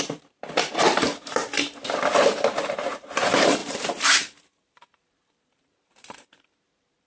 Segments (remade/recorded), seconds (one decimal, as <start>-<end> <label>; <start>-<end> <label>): 0.0-1.4 remade; 1.4-2.1 recorded; 2.1-7.1 remade